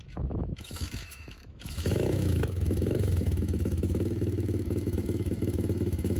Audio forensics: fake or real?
fake